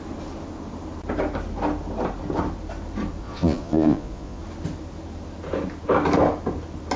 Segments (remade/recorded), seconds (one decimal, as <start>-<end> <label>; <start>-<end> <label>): 0.0-3.2 recorded; 3.2-4.4 remade; 4.4-7.0 recorded